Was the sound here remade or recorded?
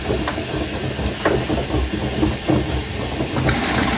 recorded